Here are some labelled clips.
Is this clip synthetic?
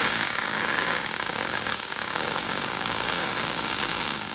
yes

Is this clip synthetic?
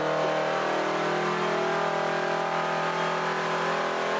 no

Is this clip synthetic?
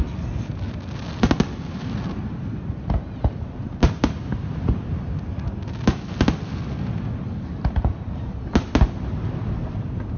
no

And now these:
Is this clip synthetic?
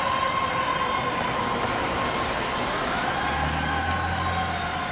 no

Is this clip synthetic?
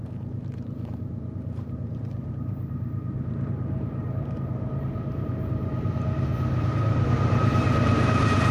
yes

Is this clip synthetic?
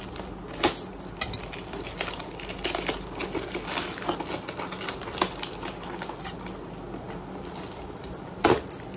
no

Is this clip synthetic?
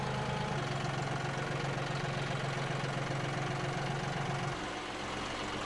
no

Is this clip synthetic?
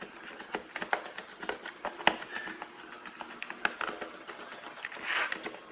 no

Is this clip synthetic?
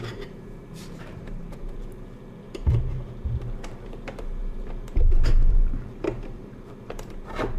yes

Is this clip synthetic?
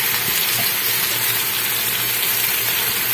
no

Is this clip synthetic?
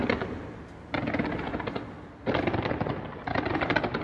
no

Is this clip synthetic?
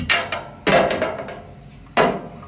no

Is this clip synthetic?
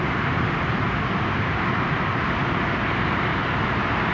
no